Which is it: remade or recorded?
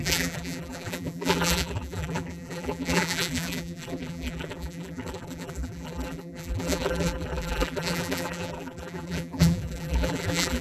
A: remade